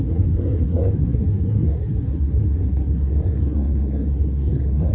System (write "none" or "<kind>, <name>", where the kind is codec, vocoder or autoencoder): codec, SNAC